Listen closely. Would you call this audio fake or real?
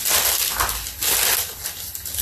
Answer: real